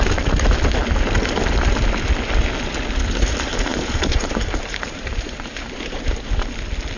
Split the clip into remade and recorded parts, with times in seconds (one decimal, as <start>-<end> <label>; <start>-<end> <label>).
0.0-3.7 recorded; 3.7-6.5 remade; 6.5-7.0 recorded